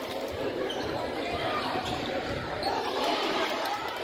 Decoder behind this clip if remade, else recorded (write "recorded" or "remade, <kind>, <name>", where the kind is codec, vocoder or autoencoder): remade, vocoder, BigVGAN v2